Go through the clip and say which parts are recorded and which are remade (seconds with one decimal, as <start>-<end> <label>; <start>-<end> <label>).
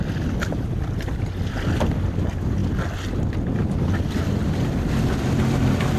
0.0-6.0 recorded